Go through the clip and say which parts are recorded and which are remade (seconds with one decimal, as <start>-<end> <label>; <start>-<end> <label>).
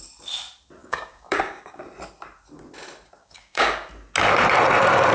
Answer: 0.0-0.8 recorded; 0.8-1.8 remade; 1.8-3.2 recorded; 3.2-3.9 remade; 3.9-5.1 recorded